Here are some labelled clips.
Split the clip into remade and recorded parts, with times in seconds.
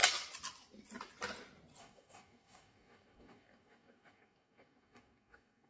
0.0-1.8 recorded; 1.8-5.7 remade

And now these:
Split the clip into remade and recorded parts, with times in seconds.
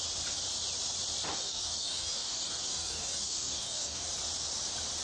0.0-1.3 recorded; 1.3-4.1 remade; 4.1-5.0 recorded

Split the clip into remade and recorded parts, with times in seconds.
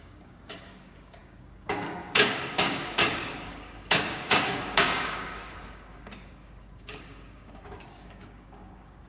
0.0-9.1 remade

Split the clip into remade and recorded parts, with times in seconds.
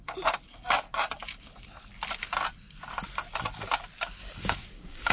0.0-4.2 recorded; 4.2-5.1 remade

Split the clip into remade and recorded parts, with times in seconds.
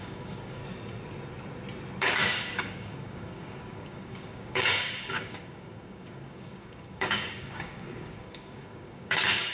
0.0-0.6 remade; 0.6-2.0 recorded; 2.0-9.5 remade